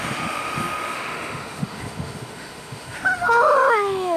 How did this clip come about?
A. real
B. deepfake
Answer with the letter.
B